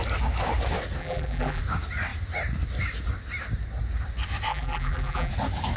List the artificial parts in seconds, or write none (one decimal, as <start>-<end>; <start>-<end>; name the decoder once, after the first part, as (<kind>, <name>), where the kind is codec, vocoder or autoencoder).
1.0-1.6 (vocoder, BigVGAN v2); 4.5-5.3